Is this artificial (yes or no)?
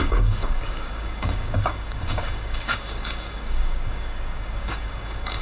yes